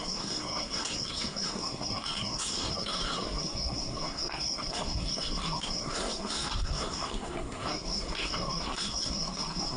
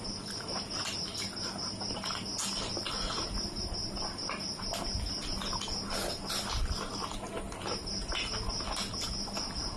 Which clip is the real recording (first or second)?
second